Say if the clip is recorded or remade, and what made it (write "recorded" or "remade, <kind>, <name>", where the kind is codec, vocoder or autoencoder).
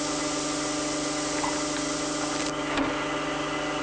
recorded